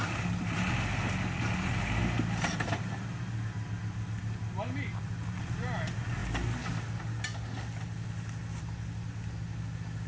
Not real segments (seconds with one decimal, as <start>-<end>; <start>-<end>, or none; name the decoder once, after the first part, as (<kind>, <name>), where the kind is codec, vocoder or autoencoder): none